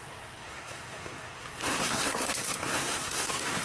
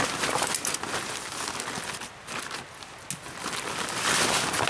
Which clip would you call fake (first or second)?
first